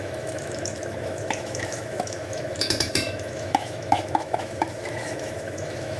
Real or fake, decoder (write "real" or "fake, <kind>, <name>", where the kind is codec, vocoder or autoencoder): fake, autoencoder, DAC-VAE